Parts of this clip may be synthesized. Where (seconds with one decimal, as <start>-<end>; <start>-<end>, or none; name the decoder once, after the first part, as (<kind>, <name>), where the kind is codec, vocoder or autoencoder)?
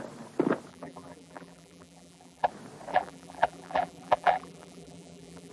0.7-2.5 (vocoder, BigVGAN v2); 2.9-5.5